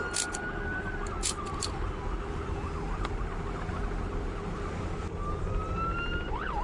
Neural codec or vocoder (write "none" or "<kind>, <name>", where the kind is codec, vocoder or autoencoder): none